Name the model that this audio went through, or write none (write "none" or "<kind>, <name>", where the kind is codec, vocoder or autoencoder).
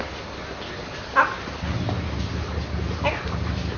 none